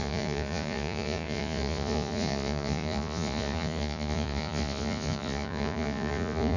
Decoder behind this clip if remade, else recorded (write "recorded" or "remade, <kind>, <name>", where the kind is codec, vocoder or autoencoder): remade, vocoder, Vocos